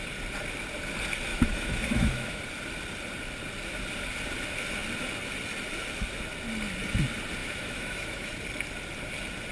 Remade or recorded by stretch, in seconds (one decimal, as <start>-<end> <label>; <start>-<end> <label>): 0.0-1.3 recorded; 1.3-2.4 remade; 2.4-7.4 recorded; 7.4-8.3 remade; 8.3-9.5 recorded